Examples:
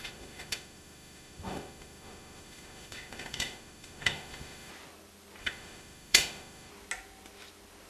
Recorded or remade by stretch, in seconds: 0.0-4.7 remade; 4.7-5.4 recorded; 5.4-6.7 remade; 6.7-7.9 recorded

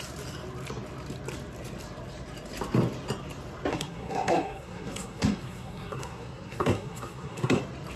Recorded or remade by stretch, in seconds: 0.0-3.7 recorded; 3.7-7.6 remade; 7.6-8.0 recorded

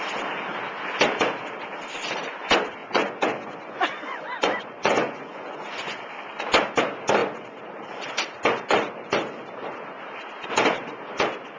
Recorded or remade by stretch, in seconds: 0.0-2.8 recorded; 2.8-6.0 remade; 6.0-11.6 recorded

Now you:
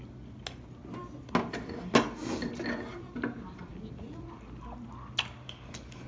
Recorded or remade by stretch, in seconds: 0.0-6.1 recorded